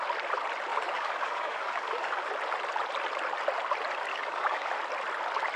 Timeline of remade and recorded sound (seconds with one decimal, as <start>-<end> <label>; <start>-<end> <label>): 0.0-0.7 recorded; 0.7-2.3 remade; 2.3-4.1 recorded; 4.1-4.7 remade; 4.7-5.6 recorded